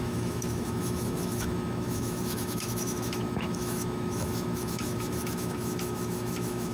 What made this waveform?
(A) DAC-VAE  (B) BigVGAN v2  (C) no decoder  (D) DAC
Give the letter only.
A